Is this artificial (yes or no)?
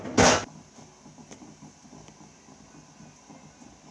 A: no